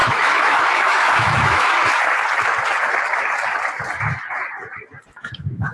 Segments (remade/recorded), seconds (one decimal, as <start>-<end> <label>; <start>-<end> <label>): 0.0-1.7 remade; 1.7-5.1 recorded; 5.1-5.7 remade